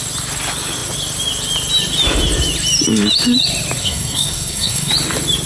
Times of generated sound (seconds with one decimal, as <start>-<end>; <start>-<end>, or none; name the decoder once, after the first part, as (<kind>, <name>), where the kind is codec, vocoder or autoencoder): 3.8-4.9 (codec, SNAC)